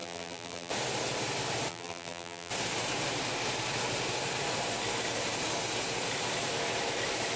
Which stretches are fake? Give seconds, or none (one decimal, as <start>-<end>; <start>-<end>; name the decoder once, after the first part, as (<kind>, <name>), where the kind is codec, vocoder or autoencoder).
0.0-0.7 (vocoder, BigVGAN v2); 1.7-2.5